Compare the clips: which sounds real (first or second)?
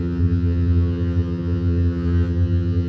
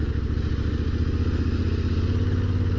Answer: second